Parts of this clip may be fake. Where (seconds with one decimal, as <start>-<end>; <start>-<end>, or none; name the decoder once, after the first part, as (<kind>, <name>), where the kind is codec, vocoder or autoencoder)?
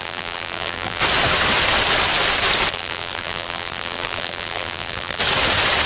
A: 0.0-1.0 (vocoder, BigVGAN v2); 2.7-5.2